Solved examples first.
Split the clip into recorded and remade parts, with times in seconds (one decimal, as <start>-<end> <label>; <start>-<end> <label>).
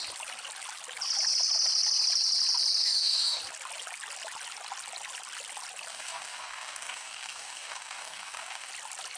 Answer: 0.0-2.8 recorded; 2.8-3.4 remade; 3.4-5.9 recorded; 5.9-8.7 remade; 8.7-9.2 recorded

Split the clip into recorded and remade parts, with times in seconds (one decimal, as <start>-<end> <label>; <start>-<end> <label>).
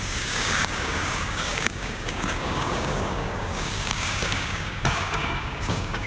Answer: 0.0-6.1 remade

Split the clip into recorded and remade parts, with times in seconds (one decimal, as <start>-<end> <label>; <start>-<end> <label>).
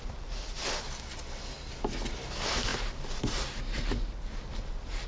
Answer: 0.0-5.1 recorded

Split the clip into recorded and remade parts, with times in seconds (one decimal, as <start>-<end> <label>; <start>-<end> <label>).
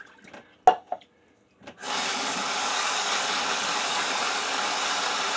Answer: 0.0-1.8 recorded; 1.8-4.9 remade; 4.9-5.4 recorded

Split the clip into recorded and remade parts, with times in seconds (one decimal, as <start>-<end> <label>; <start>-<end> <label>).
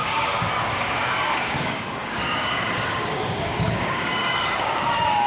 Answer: 0.0-5.3 remade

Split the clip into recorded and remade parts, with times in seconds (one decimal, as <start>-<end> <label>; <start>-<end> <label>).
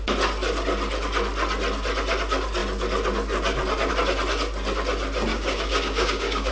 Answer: 0.0-5.3 recorded; 5.3-6.5 remade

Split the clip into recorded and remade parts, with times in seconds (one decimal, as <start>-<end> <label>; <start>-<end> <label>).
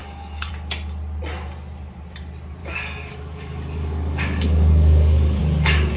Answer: 0.0-0.5 remade; 0.5-2.6 recorded; 2.6-5.4 remade; 5.4-6.0 recorded